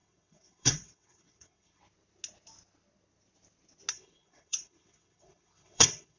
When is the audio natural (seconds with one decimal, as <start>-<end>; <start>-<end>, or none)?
1.8-3.9